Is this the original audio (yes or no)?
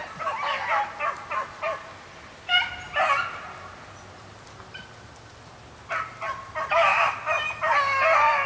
yes